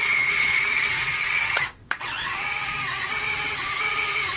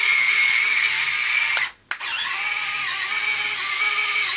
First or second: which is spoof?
first